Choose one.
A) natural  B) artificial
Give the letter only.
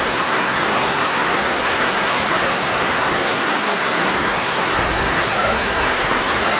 B